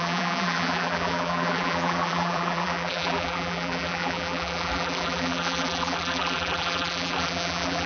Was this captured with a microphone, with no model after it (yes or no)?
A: no